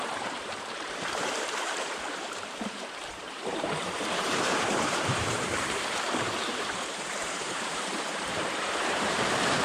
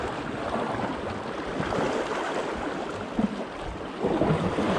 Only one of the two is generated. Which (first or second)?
first